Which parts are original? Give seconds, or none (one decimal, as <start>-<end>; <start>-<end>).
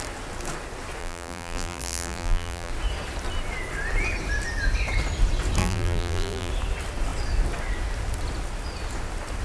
0.0-1.0; 2.7-5.6; 6.5-9.4